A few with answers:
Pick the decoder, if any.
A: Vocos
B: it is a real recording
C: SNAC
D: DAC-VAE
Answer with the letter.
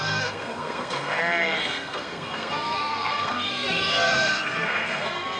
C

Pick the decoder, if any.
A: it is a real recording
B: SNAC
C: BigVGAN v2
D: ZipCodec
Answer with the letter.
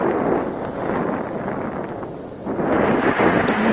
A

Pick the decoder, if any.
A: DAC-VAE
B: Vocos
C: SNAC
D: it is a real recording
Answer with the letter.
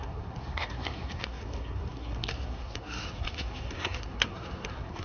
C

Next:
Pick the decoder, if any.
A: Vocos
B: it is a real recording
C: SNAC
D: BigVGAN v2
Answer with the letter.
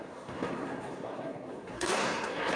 C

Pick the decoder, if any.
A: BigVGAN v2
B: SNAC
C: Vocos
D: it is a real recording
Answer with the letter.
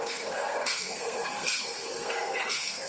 B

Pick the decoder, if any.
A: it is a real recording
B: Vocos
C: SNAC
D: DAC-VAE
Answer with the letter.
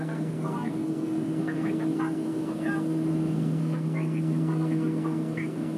C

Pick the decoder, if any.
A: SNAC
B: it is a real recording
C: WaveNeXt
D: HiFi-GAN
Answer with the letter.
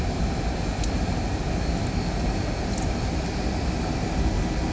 B